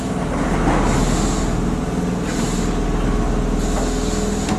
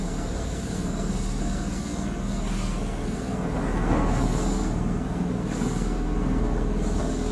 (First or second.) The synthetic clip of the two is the second